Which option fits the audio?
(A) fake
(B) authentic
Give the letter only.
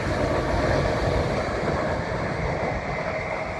B